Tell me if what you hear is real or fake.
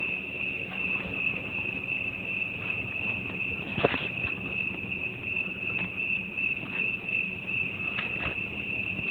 real